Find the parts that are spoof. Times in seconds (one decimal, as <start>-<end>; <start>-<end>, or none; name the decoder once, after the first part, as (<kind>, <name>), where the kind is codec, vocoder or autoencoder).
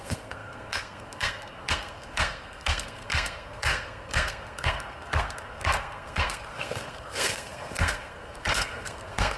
0.0-9.4 (codec, SNAC)